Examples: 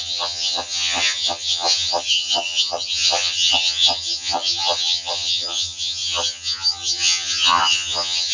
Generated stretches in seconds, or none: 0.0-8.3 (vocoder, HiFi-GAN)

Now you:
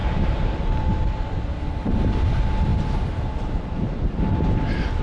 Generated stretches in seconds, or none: 2.7-4.2 (vocoder, BigVGAN v2)